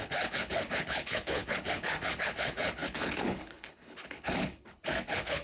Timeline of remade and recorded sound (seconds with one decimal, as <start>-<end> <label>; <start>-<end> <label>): 0.0-5.4 remade